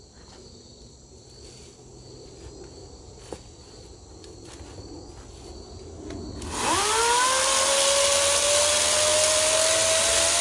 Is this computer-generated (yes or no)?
no